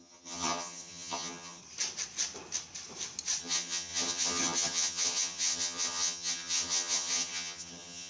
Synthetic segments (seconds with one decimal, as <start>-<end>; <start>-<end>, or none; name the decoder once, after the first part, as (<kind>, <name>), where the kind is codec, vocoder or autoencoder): 0.0-1.6 (vocoder, HiFi-GAN); 3.4-8.1